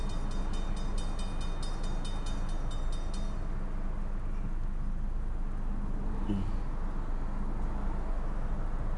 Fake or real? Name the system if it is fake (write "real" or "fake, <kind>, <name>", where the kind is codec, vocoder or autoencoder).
real